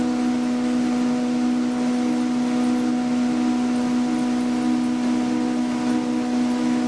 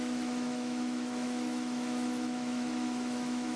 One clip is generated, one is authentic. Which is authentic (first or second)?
first